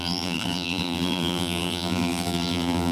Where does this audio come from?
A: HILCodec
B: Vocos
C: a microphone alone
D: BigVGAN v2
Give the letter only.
D